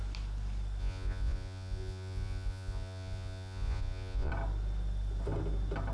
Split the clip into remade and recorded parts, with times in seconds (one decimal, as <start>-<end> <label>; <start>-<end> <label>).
0.0-0.8 recorded; 0.8-4.3 remade; 4.3-5.9 recorded